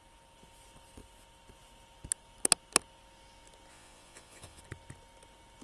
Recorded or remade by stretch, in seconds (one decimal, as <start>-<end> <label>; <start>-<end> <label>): 0.0-3.7 recorded; 3.7-4.6 remade; 4.6-5.6 recorded